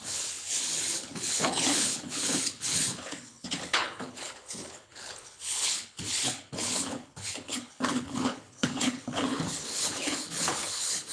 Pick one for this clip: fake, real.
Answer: fake